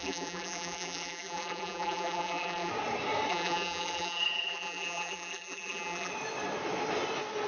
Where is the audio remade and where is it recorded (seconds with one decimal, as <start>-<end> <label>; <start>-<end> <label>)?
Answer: 0.0-2.7 remade; 2.7-3.3 recorded; 3.3-6.1 remade; 6.1-7.5 recorded